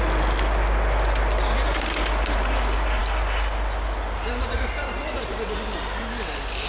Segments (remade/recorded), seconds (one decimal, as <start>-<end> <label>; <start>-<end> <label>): 0.0-6.7 recorded